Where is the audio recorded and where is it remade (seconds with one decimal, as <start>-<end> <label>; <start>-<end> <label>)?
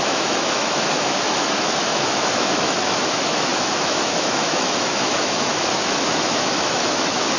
0.0-7.4 remade